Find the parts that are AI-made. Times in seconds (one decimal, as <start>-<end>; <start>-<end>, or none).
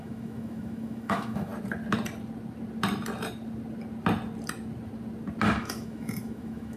0.0-1.5; 5.6-6.8